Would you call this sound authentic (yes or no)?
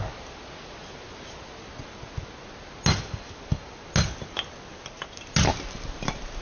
yes